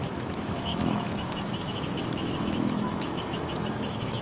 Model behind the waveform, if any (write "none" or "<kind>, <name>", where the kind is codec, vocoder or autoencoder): autoencoder, DAC-VAE